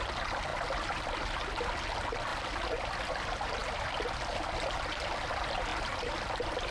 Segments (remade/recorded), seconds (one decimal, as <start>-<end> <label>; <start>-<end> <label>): 0.0-6.7 recorded

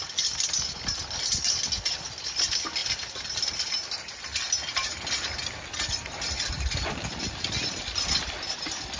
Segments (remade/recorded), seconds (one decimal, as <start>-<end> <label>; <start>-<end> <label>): 0.0-9.0 recorded